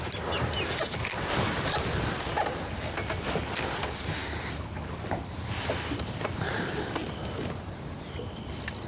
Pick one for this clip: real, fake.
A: real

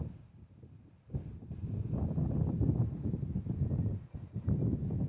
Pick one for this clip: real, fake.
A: real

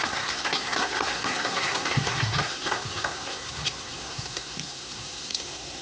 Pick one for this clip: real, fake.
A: fake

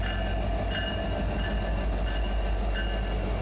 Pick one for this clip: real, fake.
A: real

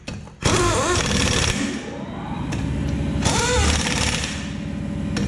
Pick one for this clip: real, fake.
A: real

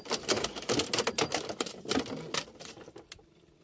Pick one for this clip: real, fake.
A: real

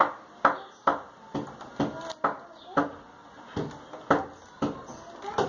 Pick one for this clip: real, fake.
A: real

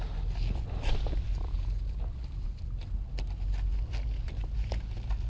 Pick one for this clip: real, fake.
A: real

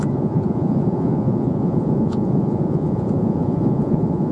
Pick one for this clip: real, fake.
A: fake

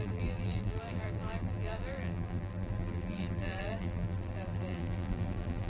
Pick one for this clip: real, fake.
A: fake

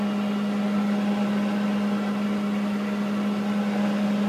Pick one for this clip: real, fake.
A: real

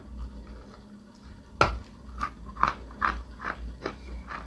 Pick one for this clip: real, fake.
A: real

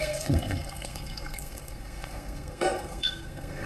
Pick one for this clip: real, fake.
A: fake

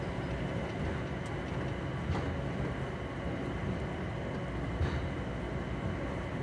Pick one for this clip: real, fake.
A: real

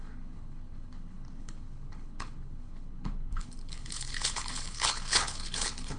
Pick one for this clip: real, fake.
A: fake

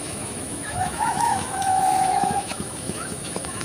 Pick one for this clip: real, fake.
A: fake